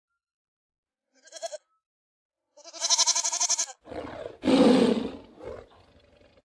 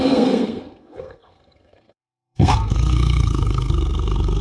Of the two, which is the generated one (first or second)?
second